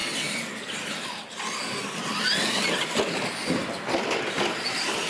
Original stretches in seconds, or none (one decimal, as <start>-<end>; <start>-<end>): 0.0-5.1